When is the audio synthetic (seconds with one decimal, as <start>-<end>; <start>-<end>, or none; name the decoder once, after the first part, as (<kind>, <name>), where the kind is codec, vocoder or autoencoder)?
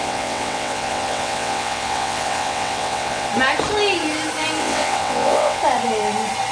0.0-3.3 (vocoder, WaveNeXt); 4.6-5.6